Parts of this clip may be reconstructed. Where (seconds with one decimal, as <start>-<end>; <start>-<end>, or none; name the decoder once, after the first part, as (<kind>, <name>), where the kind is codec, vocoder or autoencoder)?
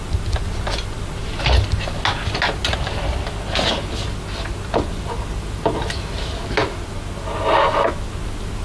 none